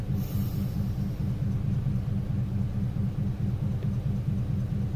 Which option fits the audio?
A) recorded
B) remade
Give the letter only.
A